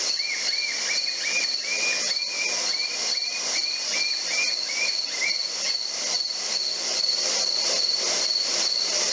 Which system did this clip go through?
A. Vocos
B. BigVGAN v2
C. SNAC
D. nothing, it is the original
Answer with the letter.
D